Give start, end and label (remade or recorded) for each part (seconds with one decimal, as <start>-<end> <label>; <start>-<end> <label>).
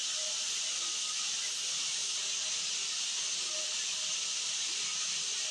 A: 0.0-0.5 recorded; 0.5-2.0 remade; 2.0-3.4 recorded; 3.4-5.5 remade